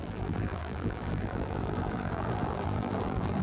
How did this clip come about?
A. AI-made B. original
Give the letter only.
A